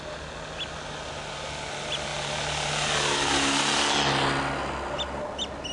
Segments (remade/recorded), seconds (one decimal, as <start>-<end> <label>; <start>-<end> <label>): 0.0-5.7 recorded

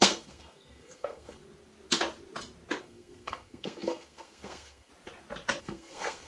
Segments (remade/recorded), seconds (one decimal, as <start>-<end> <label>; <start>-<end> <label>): 0.0-1.4 remade; 1.4-2.8 recorded; 2.8-4.9 remade; 4.9-5.6 recorded; 5.6-6.3 remade

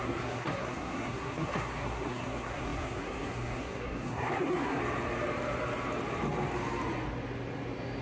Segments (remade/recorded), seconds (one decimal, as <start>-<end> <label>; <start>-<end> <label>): 0.0-4.8 remade; 4.8-8.0 recorded

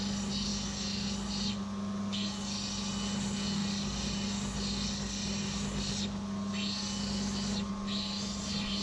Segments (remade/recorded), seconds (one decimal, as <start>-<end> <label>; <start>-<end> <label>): 0.0-8.8 recorded

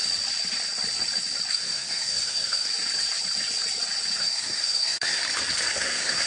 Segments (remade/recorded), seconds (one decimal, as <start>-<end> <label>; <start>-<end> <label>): 0.0-1.5 recorded; 1.5-2.7 remade; 2.7-4.2 recorded; 4.2-5.2 remade; 5.2-5.7 recorded; 5.7-6.3 remade

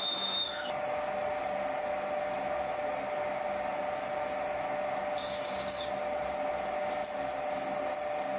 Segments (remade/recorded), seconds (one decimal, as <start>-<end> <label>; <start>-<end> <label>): 0.0-8.4 recorded

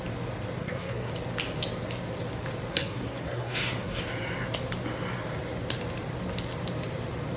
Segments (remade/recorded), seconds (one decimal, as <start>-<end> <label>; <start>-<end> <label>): 0.0-0.6 recorded; 0.6-1.1 remade; 1.1-2.7 recorded; 2.7-4.0 remade; 4.0-7.4 recorded